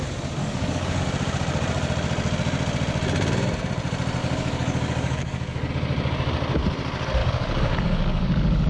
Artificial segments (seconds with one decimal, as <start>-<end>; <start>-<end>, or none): 0.4-1.0; 4.2-5.7; 7.2-8.7